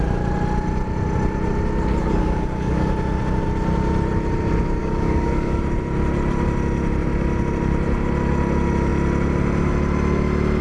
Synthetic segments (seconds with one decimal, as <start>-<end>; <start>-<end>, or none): 2.0-2.9; 4.8-5.6